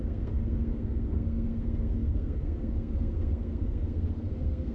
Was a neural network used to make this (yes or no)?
yes